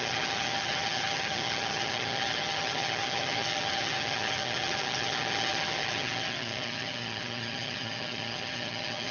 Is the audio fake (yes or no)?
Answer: yes